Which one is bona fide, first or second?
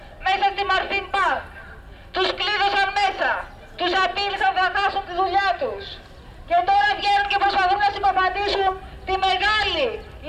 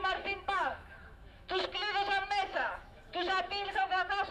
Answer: first